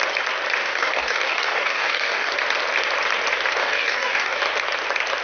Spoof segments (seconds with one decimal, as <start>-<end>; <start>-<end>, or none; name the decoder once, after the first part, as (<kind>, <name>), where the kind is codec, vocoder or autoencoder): 0.6-2.3 (codec, DAC); 3.6-4.4